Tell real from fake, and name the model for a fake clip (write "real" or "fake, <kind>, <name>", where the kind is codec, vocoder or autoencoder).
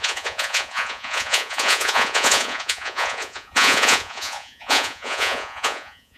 fake, vocoder, Vocos